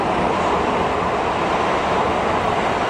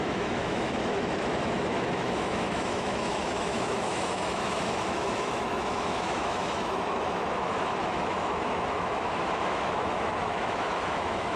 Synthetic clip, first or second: second